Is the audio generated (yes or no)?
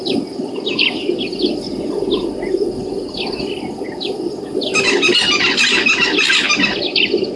no